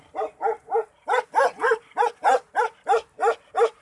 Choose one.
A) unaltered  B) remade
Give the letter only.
A